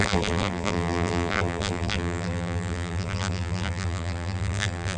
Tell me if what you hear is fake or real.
fake